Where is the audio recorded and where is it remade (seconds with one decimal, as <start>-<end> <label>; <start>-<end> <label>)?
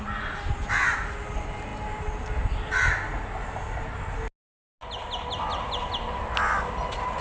0.0-7.2 recorded